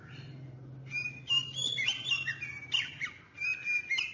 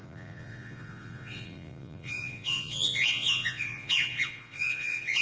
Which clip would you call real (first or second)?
first